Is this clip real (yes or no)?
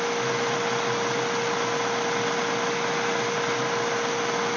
yes